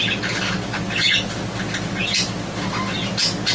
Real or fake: real